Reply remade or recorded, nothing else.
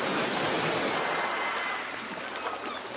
recorded